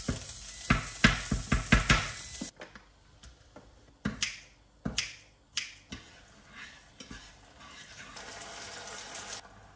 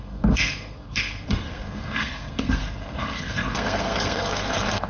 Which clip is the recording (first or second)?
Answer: first